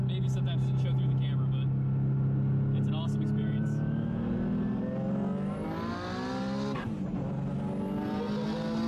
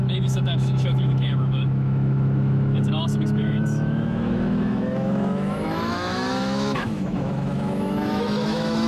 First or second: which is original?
first